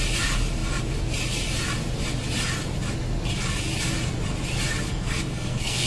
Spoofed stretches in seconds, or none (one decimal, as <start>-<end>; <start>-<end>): 4.9-5.9